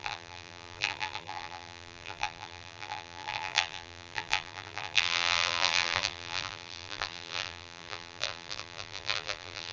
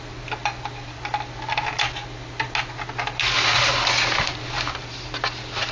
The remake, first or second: first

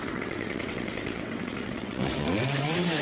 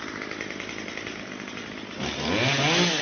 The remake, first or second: first